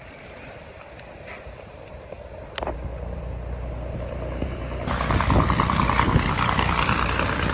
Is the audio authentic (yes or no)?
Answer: no